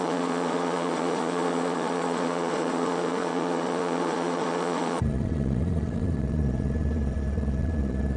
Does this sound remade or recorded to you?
remade